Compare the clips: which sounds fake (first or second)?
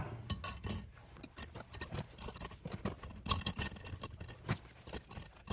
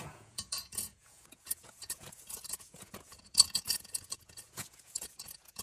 second